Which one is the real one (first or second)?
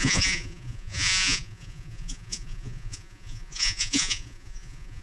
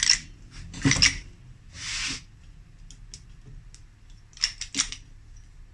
second